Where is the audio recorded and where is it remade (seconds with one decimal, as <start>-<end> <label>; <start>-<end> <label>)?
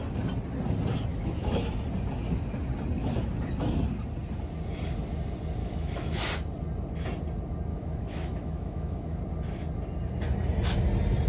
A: 0.0-1.1 recorded; 1.1-1.7 remade; 1.7-5.6 recorded; 5.6-6.2 remade; 6.2-7.7 recorded; 7.7-9.2 remade; 9.2-11.3 recorded